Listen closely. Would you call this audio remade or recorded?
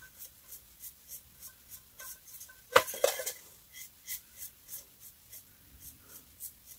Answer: remade